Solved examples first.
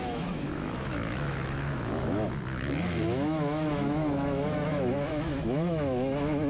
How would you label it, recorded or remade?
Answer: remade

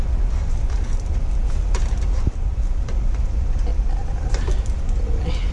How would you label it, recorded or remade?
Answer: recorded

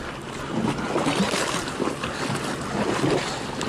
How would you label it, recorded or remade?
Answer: recorded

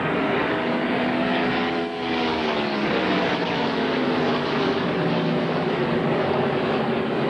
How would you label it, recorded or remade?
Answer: remade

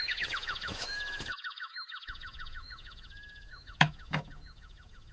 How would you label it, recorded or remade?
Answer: remade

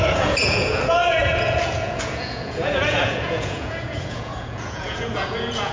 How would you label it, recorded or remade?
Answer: remade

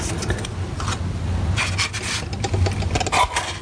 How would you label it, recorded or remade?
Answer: recorded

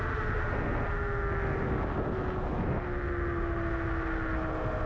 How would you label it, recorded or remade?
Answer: recorded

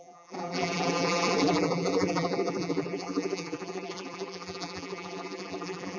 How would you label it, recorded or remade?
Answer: remade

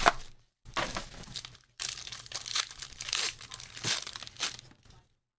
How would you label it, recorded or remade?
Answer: recorded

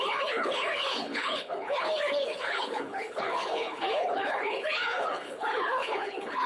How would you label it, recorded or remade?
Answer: remade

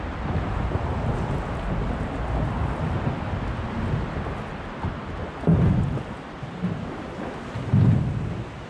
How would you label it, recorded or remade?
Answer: recorded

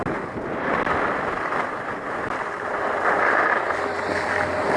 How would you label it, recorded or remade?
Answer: recorded